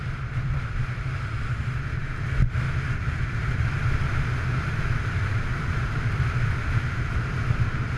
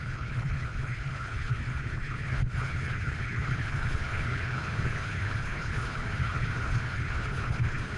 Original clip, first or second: first